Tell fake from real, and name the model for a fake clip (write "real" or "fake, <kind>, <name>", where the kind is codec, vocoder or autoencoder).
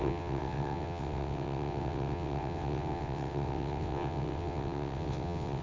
fake, vocoder, WaveNeXt